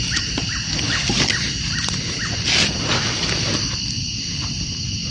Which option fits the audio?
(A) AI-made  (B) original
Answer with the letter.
B